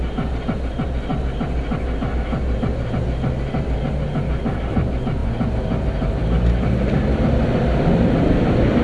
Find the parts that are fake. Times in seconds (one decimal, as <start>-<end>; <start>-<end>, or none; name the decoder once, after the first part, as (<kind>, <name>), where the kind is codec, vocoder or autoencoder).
none